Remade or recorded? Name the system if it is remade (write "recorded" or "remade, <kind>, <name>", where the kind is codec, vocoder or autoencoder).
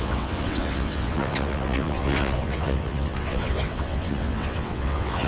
remade, vocoder, WaveNeXt